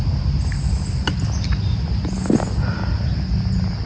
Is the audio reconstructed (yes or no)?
no